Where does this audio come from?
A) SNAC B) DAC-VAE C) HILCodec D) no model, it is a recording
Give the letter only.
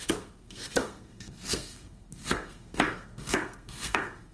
A